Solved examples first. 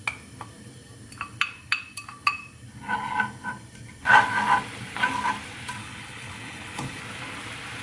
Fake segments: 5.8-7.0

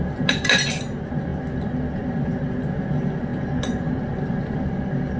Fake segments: none

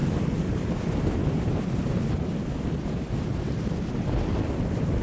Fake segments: none

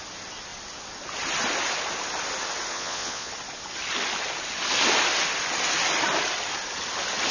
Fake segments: 2.7-3.3